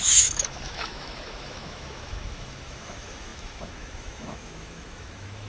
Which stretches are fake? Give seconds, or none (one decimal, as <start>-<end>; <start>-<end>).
0.0-5.5